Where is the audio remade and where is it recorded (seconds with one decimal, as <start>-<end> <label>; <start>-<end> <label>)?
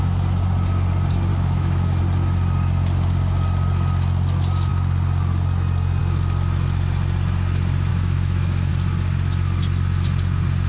0.0-1.3 recorded; 1.3-2.0 remade; 2.0-7.9 recorded; 7.9-8.7 remade; 8.7-10.7 recorded